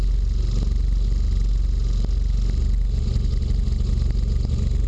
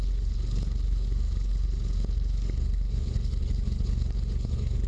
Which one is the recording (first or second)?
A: first